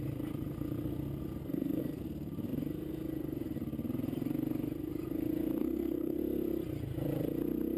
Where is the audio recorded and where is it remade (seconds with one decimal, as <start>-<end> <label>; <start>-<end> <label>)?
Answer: 0.0-1.4 recorded; 1.4-2.0 remade; 2.0-5.6 recorded; 5.6-6.2 remade; 6.2-7.8 recorded